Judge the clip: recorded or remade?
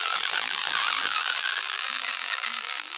remade